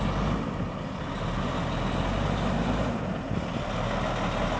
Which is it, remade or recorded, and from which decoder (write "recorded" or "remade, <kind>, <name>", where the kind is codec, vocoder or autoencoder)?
recorded